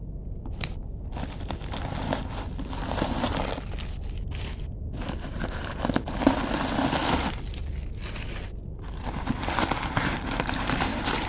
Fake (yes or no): no